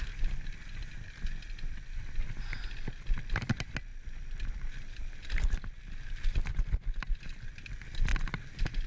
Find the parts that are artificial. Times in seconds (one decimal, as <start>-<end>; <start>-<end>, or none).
none